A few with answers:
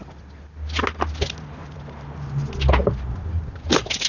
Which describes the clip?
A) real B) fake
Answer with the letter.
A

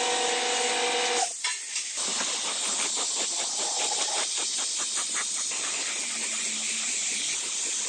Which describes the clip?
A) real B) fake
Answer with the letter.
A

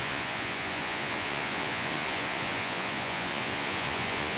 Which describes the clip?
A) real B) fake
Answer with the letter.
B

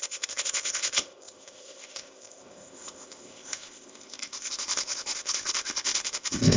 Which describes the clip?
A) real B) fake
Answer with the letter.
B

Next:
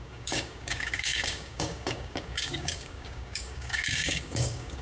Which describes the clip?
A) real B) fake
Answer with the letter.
B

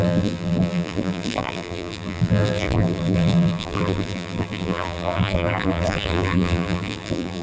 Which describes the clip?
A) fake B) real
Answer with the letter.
A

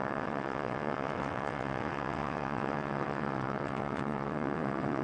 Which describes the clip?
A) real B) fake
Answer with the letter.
B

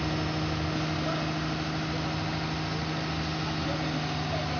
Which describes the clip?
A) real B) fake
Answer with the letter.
A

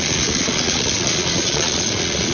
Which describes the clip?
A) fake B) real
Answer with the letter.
A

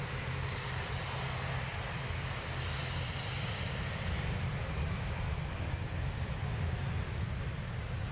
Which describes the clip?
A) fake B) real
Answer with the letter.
B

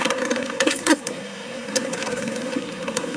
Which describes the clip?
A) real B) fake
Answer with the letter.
B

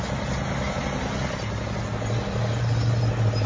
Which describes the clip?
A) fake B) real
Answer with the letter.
B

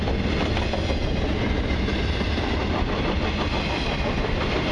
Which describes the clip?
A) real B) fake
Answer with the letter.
A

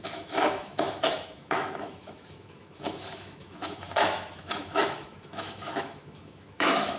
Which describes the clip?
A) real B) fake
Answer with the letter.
B